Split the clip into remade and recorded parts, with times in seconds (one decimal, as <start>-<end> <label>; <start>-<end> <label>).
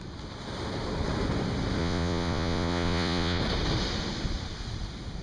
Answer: 0.0-1.8 recorded; 1.8-3.4 remade; 3.4-5.2 recorded